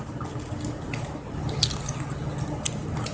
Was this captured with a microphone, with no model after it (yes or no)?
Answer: yes